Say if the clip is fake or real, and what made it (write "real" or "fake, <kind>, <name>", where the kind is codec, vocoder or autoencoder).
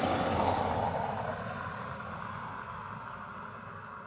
real